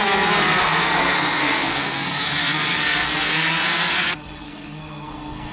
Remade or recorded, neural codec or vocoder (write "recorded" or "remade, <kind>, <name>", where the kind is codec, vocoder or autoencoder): remade, codec, SNAC